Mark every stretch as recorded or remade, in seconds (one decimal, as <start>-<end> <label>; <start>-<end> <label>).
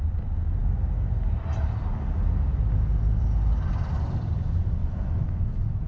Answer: 0.0-4.8 recorded; 4.8-5.4 remade; 5.4-5.9 recorded